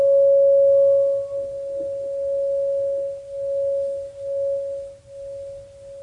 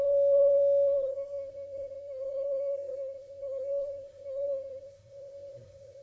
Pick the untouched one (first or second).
first